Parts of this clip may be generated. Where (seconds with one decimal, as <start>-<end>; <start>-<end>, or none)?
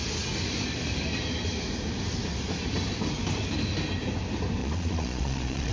4.6-5.7